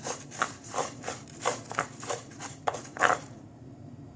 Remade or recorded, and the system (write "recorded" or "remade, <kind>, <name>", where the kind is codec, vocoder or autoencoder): remade, vocoder, BigVGAN v2